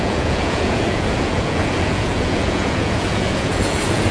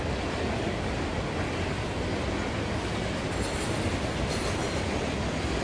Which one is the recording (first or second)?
second